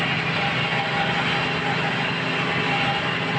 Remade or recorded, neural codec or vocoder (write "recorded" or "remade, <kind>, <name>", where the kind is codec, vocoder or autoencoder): recorded